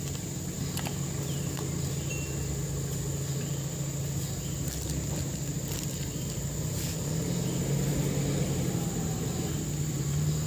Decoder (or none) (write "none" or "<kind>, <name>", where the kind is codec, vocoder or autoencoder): none